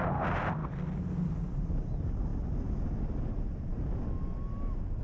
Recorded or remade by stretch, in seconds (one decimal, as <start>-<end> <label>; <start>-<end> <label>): 0.0-5.0 recorded